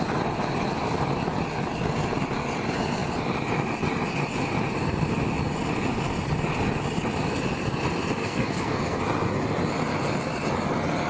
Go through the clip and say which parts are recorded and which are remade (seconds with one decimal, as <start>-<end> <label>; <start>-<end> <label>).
0.0-8.2 recorded; 8.2-9.0 remade; 9.0-11.1 recorded